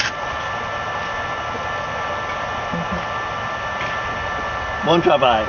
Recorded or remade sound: recorded